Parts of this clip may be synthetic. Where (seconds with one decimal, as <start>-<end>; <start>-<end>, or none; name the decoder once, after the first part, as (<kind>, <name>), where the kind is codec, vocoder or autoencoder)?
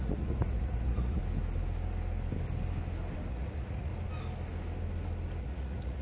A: 0.0-1.2 (vocoder, Vocos); 3.3-3.9; 5.4-6.0